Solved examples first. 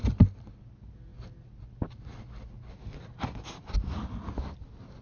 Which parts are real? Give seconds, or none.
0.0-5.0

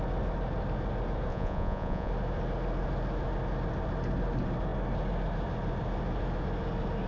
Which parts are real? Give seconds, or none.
0.0-1.3; 2.1-7.1

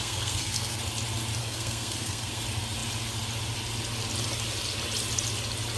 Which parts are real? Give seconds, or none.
0.8-1.4; 2.4-5.8

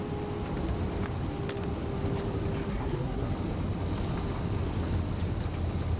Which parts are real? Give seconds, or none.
0.0-2.7; 3.3-6.0

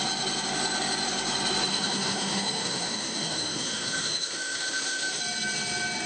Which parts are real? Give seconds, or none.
0.0-1.7; 5.2-6.1